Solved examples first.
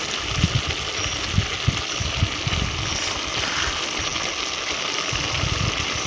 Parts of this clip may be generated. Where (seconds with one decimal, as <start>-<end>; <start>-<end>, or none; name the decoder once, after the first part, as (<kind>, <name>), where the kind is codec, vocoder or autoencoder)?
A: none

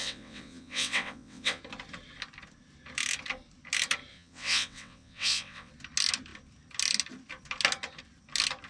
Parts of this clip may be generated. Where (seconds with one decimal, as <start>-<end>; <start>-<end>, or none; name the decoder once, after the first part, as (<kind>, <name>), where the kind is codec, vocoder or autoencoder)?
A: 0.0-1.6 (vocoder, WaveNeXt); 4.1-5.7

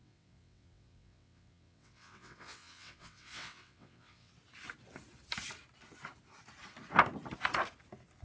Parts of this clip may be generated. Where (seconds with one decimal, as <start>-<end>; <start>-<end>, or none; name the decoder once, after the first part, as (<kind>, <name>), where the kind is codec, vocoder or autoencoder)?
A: 0.0-4.3 (vocoder, WaveNeXt)

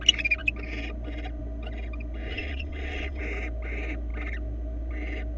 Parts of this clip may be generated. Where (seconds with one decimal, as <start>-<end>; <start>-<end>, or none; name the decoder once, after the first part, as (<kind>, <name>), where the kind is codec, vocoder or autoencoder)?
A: 2.3-3.2 (vocoder, WaveNeXt)